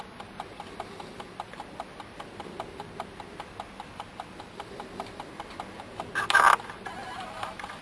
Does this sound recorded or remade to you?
recorded